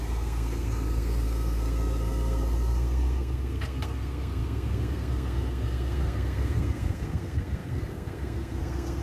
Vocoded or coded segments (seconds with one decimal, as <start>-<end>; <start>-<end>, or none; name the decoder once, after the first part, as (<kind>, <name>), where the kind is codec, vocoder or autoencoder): 0.0-9.0 (codec, SNAC)